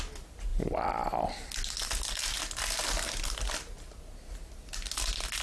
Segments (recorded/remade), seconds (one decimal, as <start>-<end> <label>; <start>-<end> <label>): 0.0-5.4 recorded